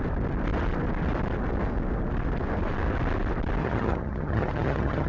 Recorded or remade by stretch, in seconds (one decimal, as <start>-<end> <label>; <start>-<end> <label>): 0.0-3.6 recorded; 3.6-5.1 remade